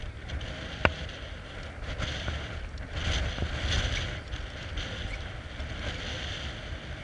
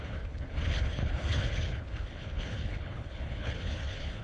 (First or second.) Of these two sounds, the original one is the first